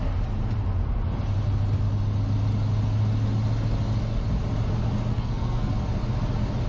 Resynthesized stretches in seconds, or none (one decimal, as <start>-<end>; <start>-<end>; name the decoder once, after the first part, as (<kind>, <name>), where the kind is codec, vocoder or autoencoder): 5.1-5.7 (codec, SNAC)